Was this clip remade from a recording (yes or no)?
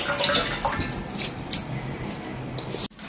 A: no